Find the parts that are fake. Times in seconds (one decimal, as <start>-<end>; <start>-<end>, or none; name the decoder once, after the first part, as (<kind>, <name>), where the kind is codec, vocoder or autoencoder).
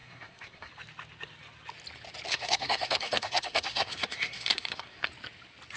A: 0.0-0.7 (codec, SNAC); 2.3-5.1